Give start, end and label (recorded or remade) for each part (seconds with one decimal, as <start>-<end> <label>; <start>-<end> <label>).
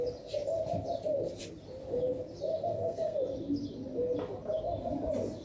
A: 0.0-2.5 recorded; 2.5-3.2 remade; 3.2-5.4 recorded